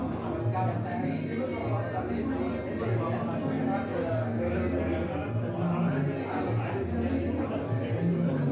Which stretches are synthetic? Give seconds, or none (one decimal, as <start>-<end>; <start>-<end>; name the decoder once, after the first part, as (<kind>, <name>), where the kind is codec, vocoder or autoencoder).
none